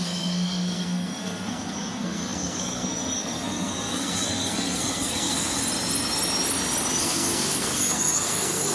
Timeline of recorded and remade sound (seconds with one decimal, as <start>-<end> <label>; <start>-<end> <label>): 0.0-5.6 remade; 5.6-7.0 recorded; 7.0-8.7 remade